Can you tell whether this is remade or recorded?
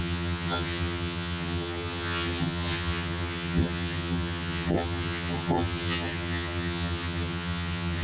remade